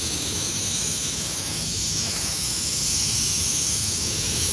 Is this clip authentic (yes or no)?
no